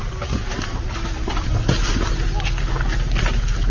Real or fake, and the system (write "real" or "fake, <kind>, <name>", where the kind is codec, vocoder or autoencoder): real